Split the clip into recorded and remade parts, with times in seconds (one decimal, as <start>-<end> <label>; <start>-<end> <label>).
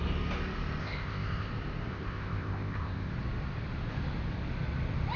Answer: 0.0-0.8 recorded; 0.8-1.5 remade; 1.5-1.9 recorded; 1.9-3.1 remade; 3.1-5.2 recorded